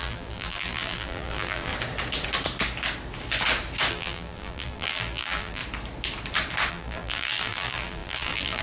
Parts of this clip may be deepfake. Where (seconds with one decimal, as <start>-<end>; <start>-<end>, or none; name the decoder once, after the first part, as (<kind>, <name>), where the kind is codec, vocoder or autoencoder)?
0.0-1.7 (vocoder, BigVGAN v2); 3.9-5.6; 6.7-8.6